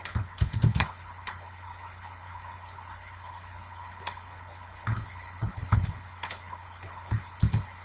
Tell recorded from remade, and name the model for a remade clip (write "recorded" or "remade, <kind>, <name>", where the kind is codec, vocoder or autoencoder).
remade, codec, HILCodec